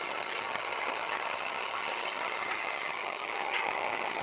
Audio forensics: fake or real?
fake